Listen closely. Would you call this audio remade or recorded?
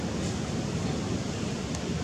recorded